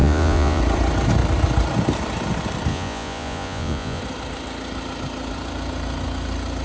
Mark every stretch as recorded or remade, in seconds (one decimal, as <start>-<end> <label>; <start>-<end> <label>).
0.0-0.6 remade; 0.6-2.7 recorded; 2.7-4.0 remade; 4.0-6.6 recorded